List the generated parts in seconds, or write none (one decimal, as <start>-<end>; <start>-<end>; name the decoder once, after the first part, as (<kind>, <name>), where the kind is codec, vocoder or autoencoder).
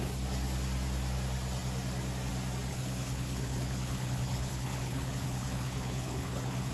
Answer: 2.7-6.7 (codec, HILCodec)